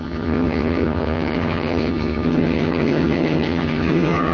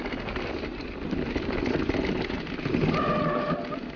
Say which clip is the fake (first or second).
first